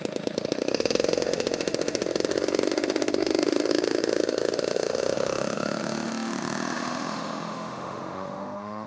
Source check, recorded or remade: remade